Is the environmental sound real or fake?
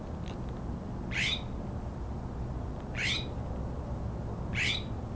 real